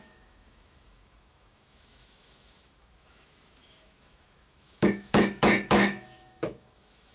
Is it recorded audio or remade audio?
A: remade